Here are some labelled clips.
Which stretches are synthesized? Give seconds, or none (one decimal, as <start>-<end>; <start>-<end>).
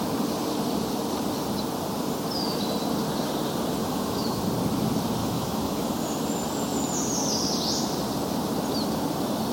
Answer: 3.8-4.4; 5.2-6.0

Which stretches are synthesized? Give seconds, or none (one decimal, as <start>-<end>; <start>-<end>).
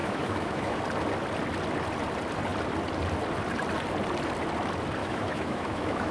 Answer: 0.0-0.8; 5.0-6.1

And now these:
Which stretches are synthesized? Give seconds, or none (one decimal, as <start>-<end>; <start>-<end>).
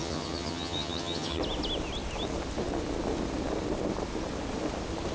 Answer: 0.0-1.4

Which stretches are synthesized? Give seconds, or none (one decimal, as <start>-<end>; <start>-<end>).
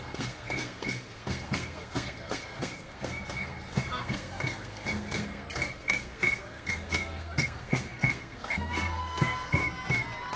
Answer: 0.0-9.6